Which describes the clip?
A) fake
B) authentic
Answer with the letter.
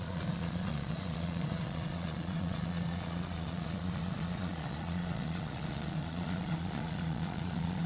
A